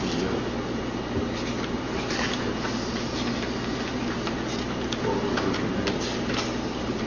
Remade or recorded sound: recorded